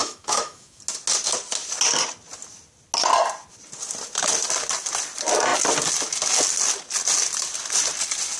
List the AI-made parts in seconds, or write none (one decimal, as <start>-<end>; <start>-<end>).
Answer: 0.0-0.8